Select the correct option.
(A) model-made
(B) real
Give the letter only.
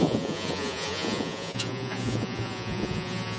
A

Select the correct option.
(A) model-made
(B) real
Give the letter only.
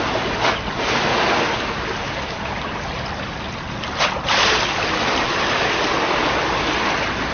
B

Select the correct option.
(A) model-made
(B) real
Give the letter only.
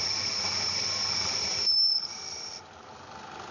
A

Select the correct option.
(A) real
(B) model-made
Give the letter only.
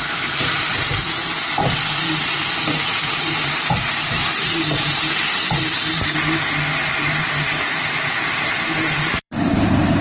B